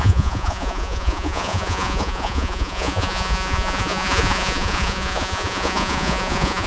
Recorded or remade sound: remade